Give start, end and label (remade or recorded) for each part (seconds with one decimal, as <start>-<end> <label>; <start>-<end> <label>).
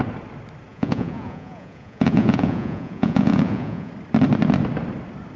0.0-0.7 recorded; 0.7-3.9 remade; 3.9-5.4 recorded